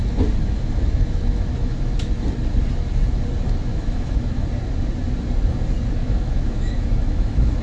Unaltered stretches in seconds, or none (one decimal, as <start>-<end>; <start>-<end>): 0.0-0.4; 2.1-3.7; 4.4-6.0

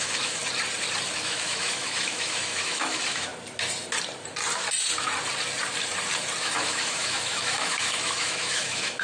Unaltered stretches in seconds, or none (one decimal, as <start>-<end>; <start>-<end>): 0.4-1.2; 3.3-6.4

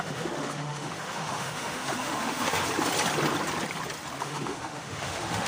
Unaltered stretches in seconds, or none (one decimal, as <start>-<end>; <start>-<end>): 2.6-4.2